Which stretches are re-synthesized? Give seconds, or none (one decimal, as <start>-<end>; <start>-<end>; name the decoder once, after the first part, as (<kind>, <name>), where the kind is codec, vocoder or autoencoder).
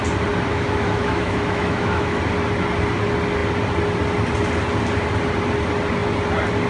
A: 0.5-2.2 (autoencoder, DAC-VAE)